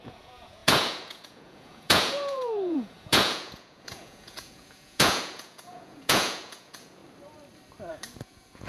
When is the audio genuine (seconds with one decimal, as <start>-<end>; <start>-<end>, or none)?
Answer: 7.0-7.9